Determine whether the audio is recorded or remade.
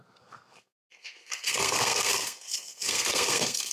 remade